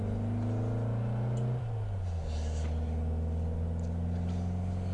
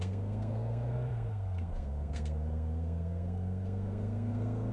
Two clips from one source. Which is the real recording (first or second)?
first